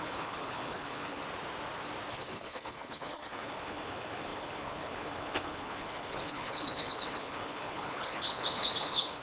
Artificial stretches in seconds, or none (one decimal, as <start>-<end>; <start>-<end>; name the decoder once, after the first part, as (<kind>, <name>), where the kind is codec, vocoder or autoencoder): 0.0-1.2 (codec, HILCodec); 2.1-9.2